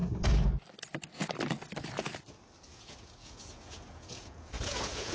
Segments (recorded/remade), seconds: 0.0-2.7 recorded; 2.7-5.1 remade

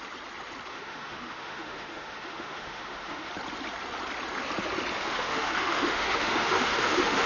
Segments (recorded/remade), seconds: 0.0-0.7 recorded; 0.7-3.3 remade; 3.3-5.0 recorded; 5.0-7.3 remade

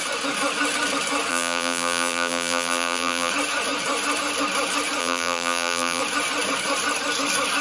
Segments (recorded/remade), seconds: 0.0-1.3 recorded; 1.3-3.3 remade; 3.3-5.0 recorded; 5.0-6.0 remade; 6.0-7.6 recorded

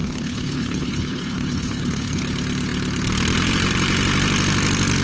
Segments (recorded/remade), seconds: 0.0-2.2 remade; 2.2-5.0 recorded

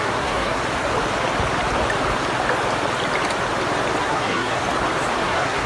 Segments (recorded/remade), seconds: 0.0-0.6 remade; 0.6-4.0 recorded; 4.0-4.6 remade; 4.6-5.2 recorded; 5.2-5.7 remade

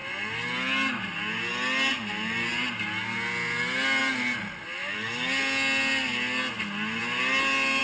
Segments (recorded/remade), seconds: 0.0-7.8 recorded

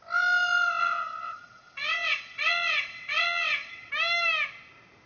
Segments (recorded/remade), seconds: 0.0-0.8 recorded; 0.8-3.9 remade; 3.9-5.1 recorded

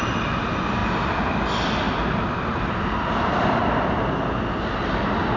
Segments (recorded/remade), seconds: 0.0-5.4 recorded